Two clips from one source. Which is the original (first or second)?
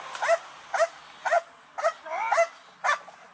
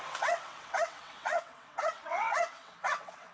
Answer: first